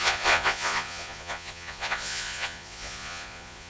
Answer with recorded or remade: remade